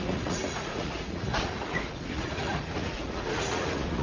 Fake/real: fake